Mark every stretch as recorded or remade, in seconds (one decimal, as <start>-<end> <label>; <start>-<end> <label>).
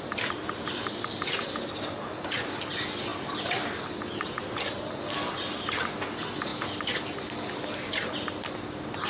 0.0-3.1 recorded; 3.1-4.0 remade; 4.0-6.5 recorded; 6.5-7.9 remade; 7.9-9.1 recorded